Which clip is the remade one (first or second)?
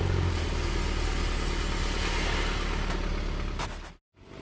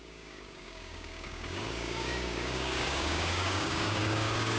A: second